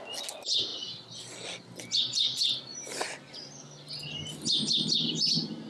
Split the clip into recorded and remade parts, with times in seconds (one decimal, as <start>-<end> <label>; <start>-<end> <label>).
0.0-5.7 recorded